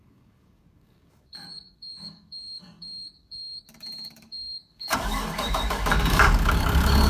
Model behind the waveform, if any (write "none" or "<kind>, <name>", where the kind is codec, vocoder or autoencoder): codec, DAC